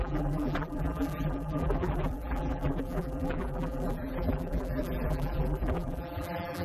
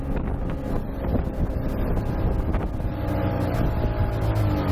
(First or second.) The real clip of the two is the second